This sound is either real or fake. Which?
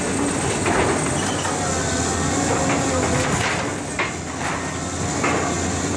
real